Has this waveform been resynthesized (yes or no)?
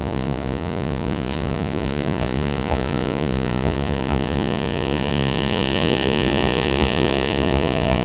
yes